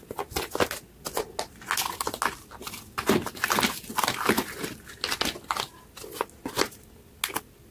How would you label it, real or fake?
real